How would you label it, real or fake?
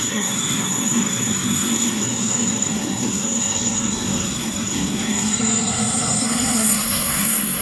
fake